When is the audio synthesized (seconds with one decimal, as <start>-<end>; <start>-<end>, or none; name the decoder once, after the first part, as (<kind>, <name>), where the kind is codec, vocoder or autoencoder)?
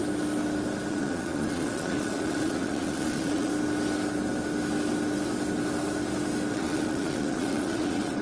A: 0.9-3.5 (vocoder, Vocos); 6.5-8.2